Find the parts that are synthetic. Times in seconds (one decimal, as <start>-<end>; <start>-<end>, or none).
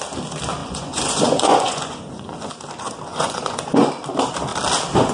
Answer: 0.6-2.5; 3.1-3.9